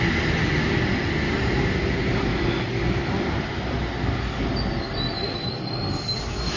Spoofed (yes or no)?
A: no